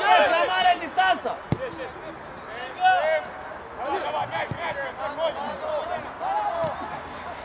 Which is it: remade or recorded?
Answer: recorded